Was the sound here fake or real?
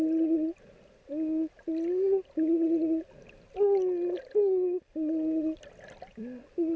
real